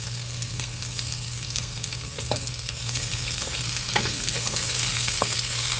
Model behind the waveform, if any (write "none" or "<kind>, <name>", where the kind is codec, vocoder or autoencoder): codec, SNAC